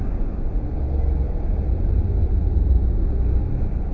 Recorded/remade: recorded